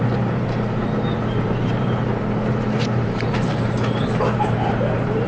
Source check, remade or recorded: remade